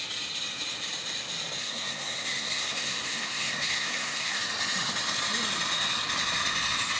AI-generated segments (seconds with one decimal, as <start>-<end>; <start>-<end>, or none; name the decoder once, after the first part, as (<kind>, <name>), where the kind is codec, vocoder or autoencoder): 1.6-4.4 (codec, SNAC)